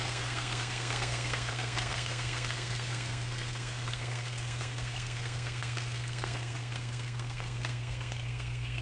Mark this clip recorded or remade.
remade